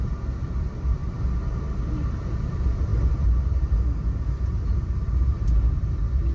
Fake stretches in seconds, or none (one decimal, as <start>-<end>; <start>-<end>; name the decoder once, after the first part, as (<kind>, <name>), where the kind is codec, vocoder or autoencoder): 0.0-1.0 (vocoder, BigVGAN v2); 1.9-6.3